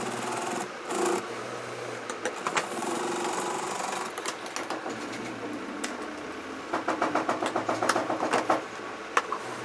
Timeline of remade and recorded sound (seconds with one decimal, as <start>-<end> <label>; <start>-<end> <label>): 0.0-2.5 recorded; 2.5-3.0 remade; 3.0-9.6 recorded